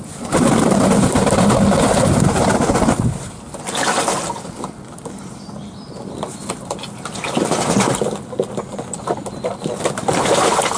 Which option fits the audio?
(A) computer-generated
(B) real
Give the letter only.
B